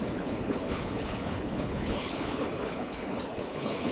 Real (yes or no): no